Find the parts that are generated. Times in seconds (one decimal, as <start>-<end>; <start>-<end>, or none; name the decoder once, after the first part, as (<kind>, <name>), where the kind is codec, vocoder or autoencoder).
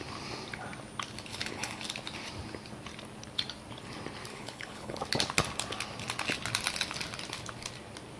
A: 1.3-1.8 (codec, HILCodec); 4.3-5.0